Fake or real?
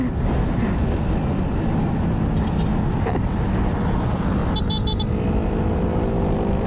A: real